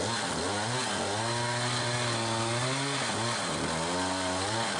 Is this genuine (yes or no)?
yes